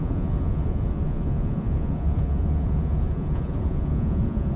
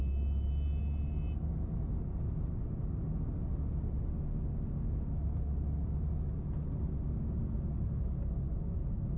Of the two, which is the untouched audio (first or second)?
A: second